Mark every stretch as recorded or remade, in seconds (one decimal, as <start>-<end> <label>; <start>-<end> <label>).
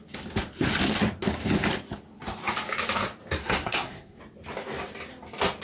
0.0-3.4 recorded; 3.4-4.2 remade; 4.2-5.6 recorded